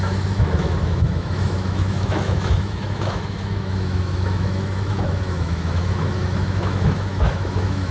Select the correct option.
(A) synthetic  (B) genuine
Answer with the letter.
A